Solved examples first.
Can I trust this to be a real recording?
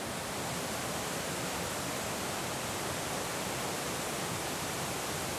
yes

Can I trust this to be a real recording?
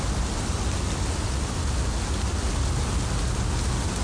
yes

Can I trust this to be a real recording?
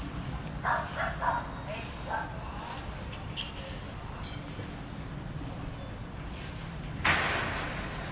yes